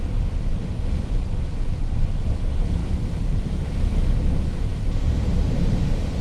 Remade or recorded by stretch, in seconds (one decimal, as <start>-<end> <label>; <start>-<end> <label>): 0.0-6.2 recorded